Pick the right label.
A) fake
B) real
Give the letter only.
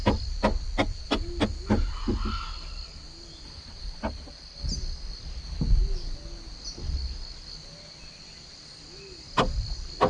B